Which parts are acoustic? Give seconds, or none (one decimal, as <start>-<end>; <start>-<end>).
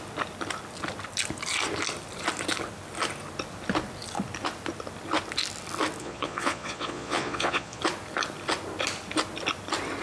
0.0-6.0; 7.8-10.0